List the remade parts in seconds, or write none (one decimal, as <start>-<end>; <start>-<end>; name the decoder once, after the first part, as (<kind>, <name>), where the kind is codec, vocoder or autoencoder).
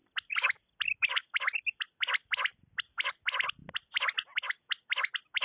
0.0-3.1 (vocoder, BigVGAN v2); 3.6-4.3